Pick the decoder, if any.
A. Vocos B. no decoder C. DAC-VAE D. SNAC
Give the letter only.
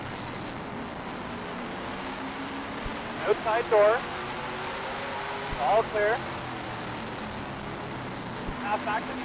B